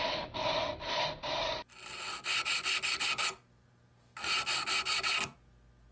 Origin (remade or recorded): recorded